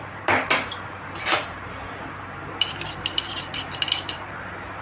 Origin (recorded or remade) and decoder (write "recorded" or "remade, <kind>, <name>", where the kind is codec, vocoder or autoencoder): remade, vocoder, BigVGAN v2